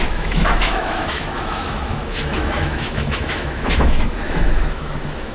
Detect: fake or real fake